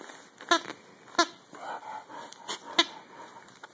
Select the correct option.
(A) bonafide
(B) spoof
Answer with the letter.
A